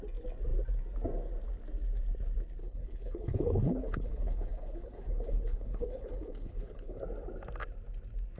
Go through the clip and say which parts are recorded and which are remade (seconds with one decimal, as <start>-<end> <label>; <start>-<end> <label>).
0.0-2.6 recorded; 2.6-7.0 remade; 7.0-8.4 recorded